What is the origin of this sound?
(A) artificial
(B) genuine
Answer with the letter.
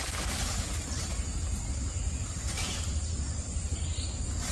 B